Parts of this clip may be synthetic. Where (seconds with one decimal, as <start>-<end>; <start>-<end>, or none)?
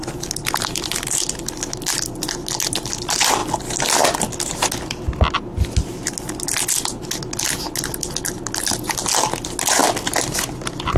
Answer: 9.8-11.0